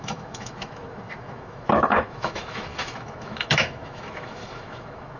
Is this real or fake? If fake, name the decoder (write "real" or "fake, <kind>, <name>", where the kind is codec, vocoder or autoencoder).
fake, autoencoder, DAC-VAE